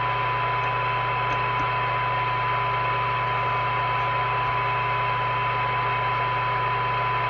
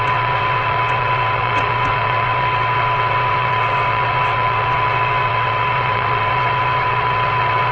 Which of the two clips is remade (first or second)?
second